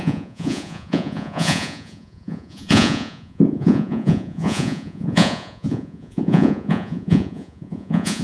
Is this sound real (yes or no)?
no